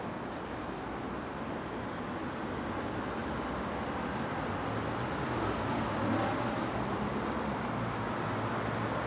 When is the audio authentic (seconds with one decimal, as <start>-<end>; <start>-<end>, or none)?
0.0-9.1